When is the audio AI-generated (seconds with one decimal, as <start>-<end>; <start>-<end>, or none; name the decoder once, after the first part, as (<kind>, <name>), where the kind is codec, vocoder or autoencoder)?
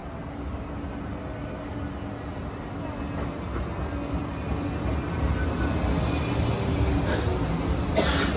none